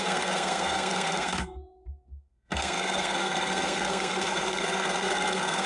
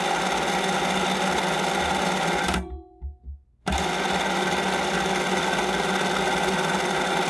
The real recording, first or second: second